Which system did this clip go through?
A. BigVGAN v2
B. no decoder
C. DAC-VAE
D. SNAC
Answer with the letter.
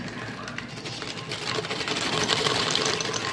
B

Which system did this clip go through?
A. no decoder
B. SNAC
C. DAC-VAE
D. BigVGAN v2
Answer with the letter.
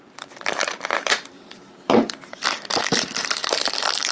D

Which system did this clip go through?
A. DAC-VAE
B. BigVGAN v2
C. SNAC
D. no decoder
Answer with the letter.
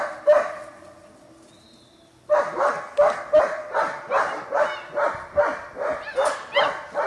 D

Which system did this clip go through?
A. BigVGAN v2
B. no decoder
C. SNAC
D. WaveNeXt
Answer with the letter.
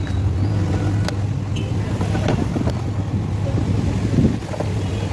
B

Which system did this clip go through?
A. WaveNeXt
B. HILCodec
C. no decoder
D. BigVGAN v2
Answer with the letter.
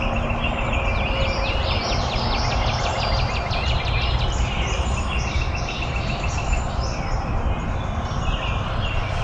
C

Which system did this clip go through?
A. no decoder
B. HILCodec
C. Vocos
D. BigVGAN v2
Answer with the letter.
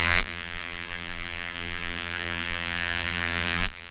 D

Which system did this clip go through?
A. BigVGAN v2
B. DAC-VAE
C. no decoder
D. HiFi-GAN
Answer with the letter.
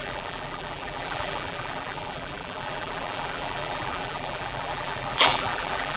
A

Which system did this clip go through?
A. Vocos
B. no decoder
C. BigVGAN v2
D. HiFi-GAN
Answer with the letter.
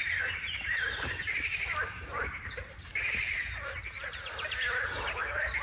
C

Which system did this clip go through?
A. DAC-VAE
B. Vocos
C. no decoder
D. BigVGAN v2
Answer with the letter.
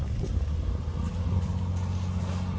C